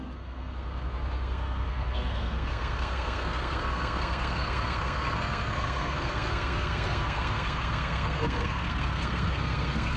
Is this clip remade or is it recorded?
remade